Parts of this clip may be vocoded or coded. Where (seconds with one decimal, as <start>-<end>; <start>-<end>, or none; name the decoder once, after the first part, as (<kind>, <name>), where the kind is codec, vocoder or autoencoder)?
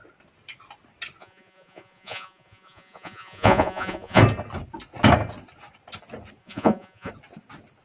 1.2-4.2 (vocoder, Vocos); 6.4-7.1